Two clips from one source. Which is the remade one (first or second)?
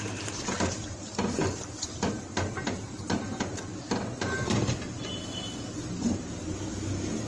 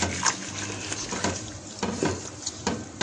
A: first